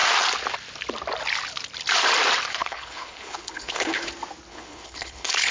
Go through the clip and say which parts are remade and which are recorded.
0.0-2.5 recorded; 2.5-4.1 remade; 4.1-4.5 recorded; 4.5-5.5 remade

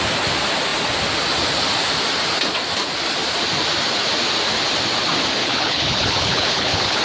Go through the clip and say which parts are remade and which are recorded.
0.0-5.4 recorded; 5.4-7.0 remade

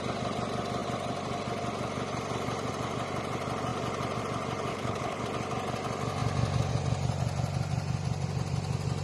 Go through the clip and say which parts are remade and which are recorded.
0.0-4.7 recorded; 4.7-5.2 remade; 5.2-9.0 recorded

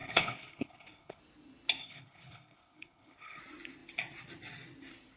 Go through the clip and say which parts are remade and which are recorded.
0.0-1.2 remade; 1.2-1.8 recorded; 1.8-3.4 remade; 3.4-5.2 recorded

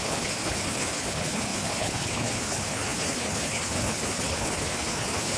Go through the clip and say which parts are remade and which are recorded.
0.0-5.4 remade

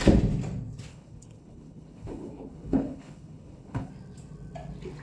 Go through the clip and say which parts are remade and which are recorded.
0.0-0.9 recorded; 0.9-3.9 remade; 3.9-5.0 recorded

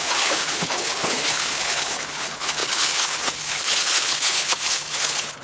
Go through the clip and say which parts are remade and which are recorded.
0.0-5.4 remade

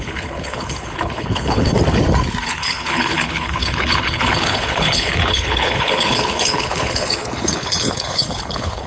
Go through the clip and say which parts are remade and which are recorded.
0.0-1.7 remade; 1.7-2.4 recorded; 2.4-8.9 remade